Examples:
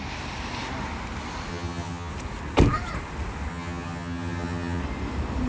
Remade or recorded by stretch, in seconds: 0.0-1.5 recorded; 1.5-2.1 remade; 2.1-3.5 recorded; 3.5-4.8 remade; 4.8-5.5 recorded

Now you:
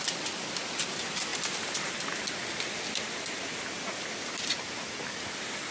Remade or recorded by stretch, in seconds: 0.0-5.7 recorded

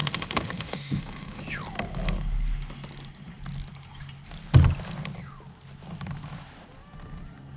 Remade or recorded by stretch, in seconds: 0.0-1.4 remade; 1.4-7.6 recorded

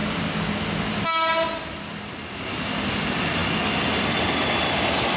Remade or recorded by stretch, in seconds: 0.0-5.2 recorded

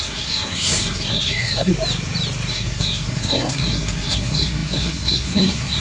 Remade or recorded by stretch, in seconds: 0.0-1.7 remade; 1.7-2.5 recorded; 2.5-5.8 remade